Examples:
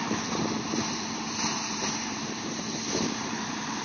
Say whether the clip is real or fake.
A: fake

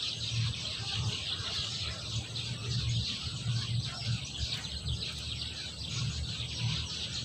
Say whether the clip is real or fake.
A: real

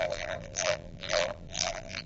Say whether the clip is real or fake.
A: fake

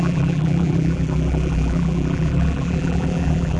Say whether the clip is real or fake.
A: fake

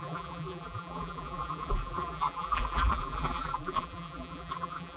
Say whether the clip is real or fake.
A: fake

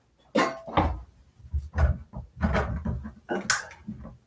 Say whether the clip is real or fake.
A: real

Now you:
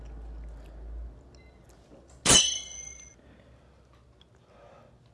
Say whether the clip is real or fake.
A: real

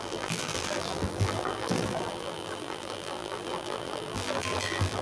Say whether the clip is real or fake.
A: fake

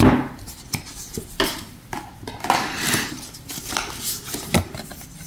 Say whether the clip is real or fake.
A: real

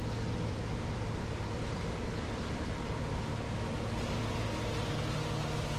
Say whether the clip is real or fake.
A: real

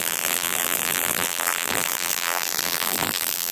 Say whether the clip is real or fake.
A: fake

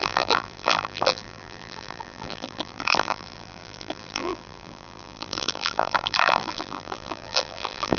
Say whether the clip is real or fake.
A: fake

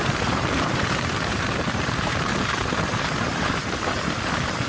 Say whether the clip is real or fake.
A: fake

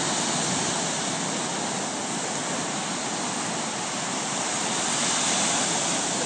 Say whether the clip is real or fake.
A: real